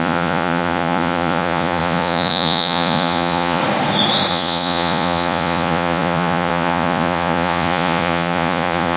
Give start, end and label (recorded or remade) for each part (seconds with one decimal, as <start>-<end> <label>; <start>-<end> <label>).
0.0-3.6 remade; 3.6-4.3 recorded; 4.3-9.0 remade